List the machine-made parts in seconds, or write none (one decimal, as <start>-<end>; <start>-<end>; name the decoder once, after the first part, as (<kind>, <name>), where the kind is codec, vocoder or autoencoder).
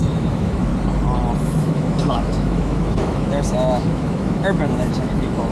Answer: 0.0-0.7 (autoencoder, DAC-VAE); 1.4-5.5